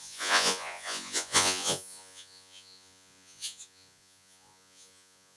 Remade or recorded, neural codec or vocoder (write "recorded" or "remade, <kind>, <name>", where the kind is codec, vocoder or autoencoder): remade, vocoder, Vocos